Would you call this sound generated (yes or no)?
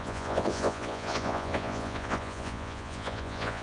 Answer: yes